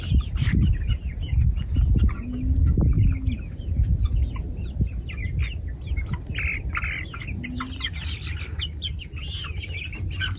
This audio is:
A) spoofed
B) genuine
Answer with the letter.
B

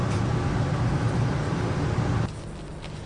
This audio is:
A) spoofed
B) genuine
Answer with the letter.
B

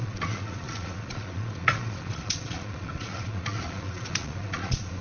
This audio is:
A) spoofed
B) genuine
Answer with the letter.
A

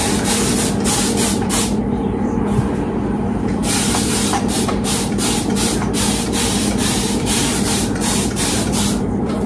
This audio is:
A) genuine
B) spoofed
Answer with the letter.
B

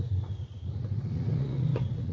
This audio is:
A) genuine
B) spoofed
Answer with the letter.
B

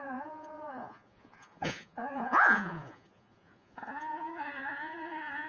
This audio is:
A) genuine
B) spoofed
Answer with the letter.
B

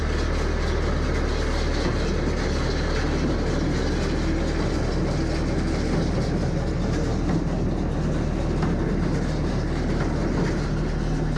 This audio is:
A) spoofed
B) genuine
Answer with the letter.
B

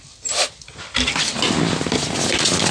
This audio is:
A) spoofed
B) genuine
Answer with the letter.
B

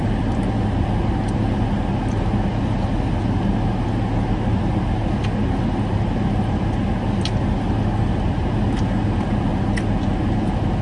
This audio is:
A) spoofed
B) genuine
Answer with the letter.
B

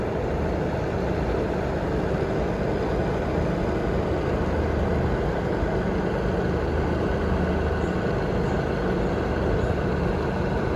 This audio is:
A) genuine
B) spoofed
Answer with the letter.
A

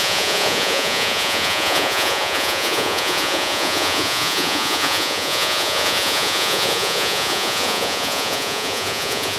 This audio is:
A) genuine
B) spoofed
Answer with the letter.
B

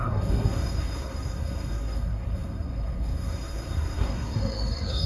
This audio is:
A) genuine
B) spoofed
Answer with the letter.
B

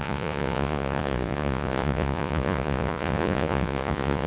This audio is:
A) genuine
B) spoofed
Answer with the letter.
B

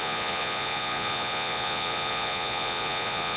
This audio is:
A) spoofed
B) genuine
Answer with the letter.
A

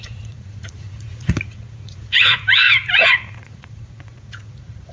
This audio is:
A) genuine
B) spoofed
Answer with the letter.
B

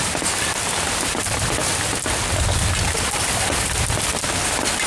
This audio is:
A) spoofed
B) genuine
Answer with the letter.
B